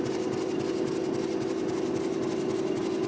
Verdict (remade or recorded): recorded